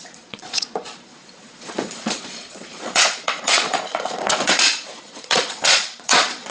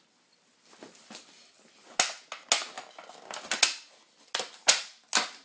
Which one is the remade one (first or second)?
first